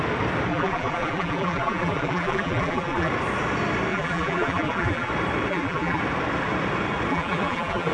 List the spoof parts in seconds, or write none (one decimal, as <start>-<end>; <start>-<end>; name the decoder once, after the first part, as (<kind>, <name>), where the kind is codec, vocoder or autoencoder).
0.5-3.1 (vocoder, BigVGAN v2); 3.9-5.1; 5.5-6.0; 7.1-7.9